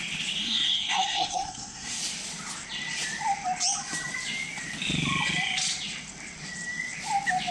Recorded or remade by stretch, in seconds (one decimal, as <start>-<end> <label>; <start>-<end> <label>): 0.0-0.4 recorded; 0.4-2.0 remade; 2.0-7.5 recorded